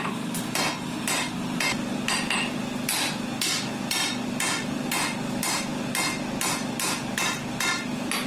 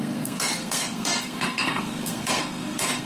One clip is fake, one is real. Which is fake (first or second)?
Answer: second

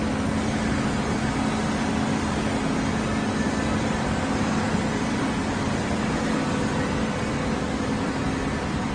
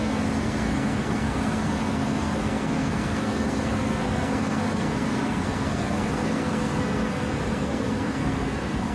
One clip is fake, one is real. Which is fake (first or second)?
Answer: second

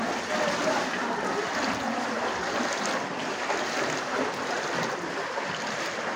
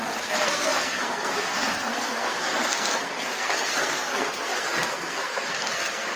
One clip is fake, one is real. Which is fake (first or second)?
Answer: second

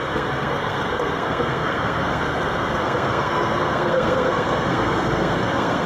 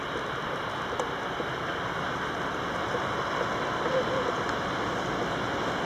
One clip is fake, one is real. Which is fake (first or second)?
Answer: first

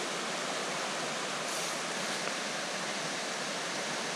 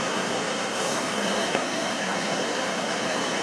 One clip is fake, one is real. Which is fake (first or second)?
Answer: second